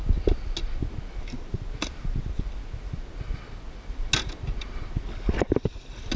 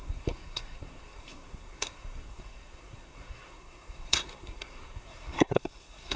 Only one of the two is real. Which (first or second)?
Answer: first